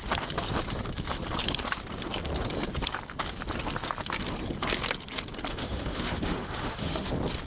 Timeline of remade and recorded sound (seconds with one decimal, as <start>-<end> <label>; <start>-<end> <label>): 0.0-5.5 recorded; 5.5-7.1 remade; 7.1-7.5 recorded